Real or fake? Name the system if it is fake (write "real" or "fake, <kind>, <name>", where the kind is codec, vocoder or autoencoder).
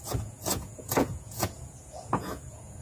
fake, vocoder, Vocos